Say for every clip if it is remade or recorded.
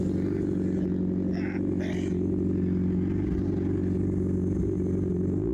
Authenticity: recorded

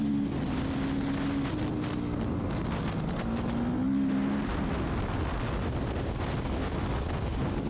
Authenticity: recorded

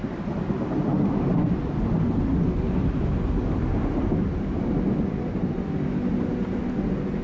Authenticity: recorded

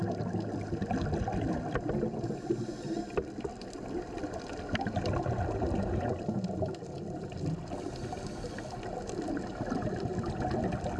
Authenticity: recorded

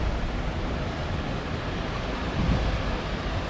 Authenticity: remade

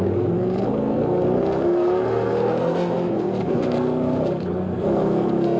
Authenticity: remade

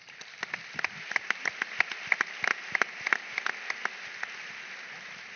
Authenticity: recorded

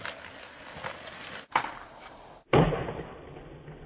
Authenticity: recorded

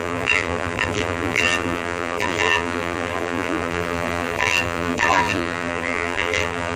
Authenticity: remade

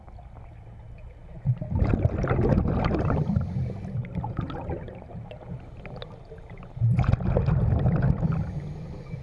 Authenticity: recorded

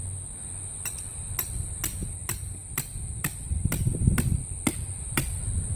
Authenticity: recorded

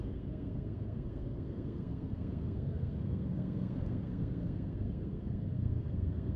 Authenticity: remade